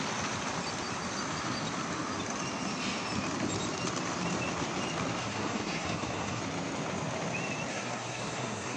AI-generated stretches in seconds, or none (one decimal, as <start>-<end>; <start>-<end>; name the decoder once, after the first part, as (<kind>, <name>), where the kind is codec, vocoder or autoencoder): 5.2-6.4 (codec, SNAC); 7.7-8.8